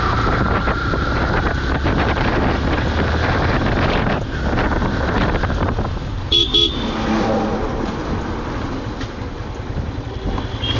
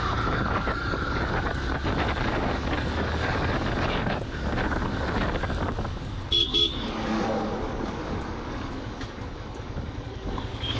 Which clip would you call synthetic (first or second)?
second